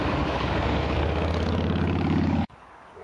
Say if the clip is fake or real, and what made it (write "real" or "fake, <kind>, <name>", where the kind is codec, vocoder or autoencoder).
fake, codec, DAC